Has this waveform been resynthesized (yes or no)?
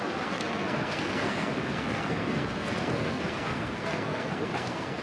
yes